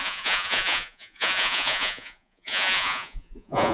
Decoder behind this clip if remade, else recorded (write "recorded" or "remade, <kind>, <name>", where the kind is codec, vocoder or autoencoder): remade, vocoder, Vocos